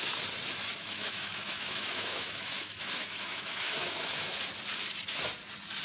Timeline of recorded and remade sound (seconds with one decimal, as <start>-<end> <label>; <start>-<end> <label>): 0.0-0.8 recorded; 0.8-4.3 remade; 4.3-5.8 recorded